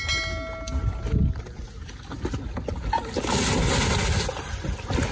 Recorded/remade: recorded